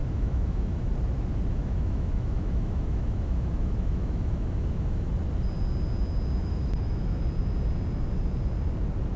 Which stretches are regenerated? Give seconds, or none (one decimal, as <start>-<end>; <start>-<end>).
0.0-0.9; 1.5-5.1; 6.4-7.2